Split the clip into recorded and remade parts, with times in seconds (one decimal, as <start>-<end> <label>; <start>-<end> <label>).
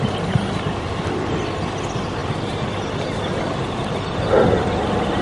0.0-5.2 recorded